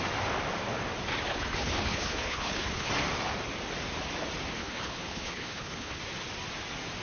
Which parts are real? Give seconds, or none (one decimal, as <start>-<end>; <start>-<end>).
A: 0.0-1.3; 2.9-4.6; 6.0-7.0